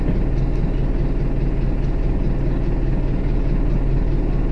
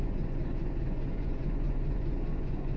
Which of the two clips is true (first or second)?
first